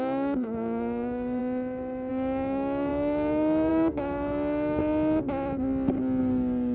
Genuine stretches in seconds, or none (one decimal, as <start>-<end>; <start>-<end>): 1.4-2.1; 4.8-6.2